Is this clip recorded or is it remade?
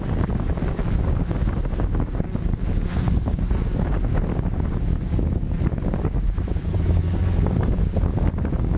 remade